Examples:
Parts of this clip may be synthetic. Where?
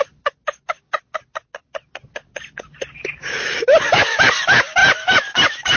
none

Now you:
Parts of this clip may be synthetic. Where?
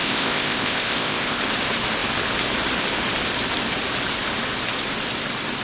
0.0-1.4 (codec, ZipCodec)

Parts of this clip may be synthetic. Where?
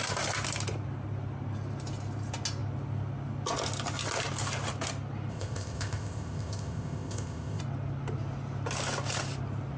5.3-7.6 (codec, ZipCodec)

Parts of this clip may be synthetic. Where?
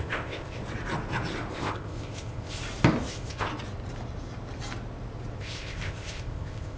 0.0-0.6 (codec, ZipCodec); 1.5-2.6; 3.1-3.5; 5.4-6.8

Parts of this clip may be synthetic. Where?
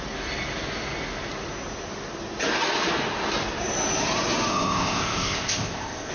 4.5-6.1 (codec, ZipCodec)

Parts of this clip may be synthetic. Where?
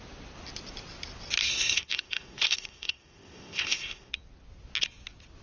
1.5-4.1 (codec, ZipCodec)